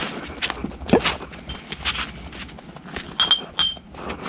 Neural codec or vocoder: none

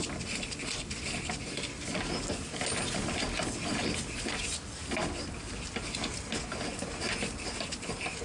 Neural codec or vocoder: none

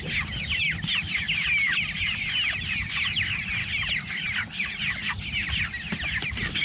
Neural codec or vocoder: vocoder, BigVGAN v2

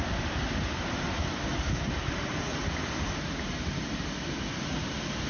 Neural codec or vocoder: none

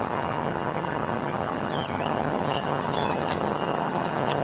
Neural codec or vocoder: vocoder, HiFi-GAN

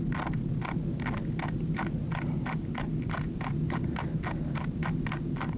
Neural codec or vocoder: none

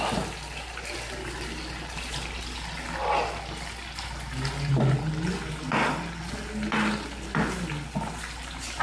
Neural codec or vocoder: none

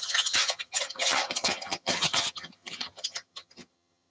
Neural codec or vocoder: vocoder, HiFi-GAN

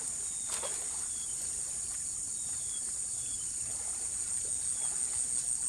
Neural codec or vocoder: none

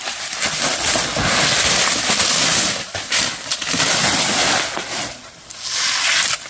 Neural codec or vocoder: none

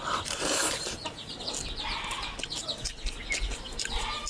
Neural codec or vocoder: none